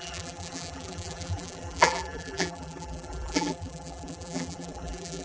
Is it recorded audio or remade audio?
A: remade